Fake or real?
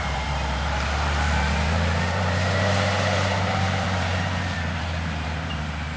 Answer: fake